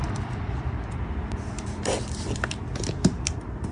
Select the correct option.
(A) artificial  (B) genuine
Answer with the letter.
A